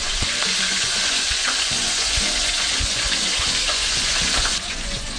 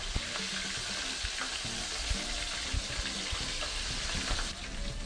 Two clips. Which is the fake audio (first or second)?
first